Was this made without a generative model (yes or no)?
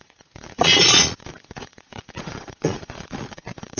no